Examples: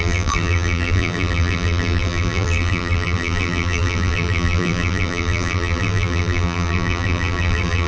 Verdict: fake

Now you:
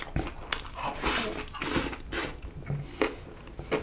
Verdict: real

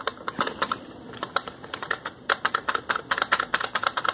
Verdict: fake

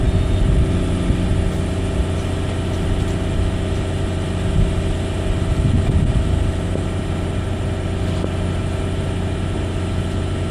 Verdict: real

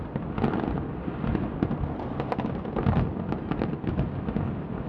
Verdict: real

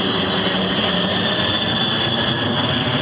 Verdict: real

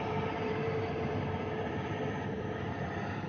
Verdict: fake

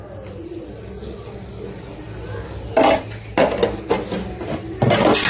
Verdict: real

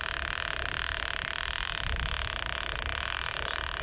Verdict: real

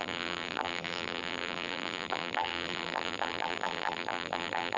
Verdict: fake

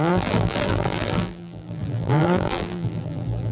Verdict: fake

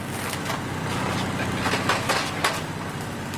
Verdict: real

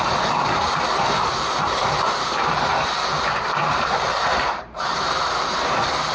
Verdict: fake